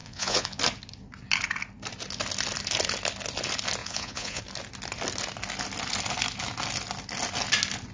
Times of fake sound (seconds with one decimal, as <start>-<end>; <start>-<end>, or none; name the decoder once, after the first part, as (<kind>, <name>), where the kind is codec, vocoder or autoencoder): 0.0-0.6 (vocoder, Vocos); 3.8-4.4